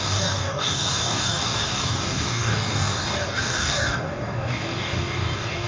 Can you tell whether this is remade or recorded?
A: remade